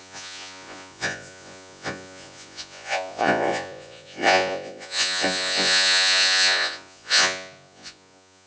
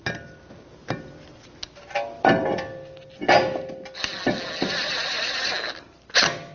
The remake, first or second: first